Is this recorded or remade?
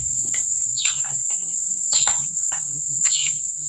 remade